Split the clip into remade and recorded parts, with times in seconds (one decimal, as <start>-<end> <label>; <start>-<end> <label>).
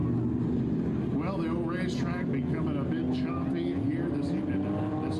0.0-5.2 recorded